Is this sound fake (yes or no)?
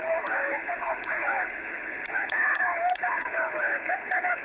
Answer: yes